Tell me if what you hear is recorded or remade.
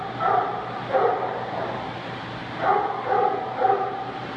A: recorded